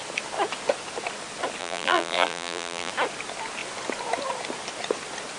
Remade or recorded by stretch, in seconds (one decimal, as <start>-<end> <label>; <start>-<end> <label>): 0.0-1.6 recorded; 1.6-2.9 remade; 2.9-5.4 recorded